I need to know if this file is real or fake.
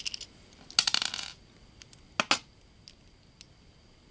real